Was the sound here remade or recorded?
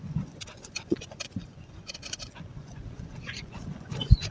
remade